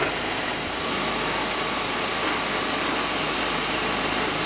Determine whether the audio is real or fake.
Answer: real